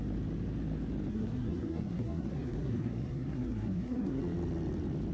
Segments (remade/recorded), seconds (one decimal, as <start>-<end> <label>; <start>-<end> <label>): 0.0-1.1 recorded; 1.1-4.2 remade; 4.2-5.1 recorded